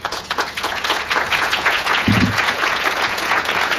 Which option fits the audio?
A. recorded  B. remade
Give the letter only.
B